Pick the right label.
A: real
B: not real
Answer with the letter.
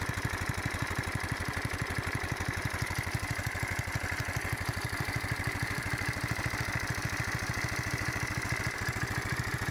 B